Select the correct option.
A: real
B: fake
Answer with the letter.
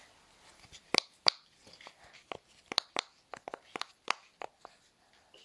B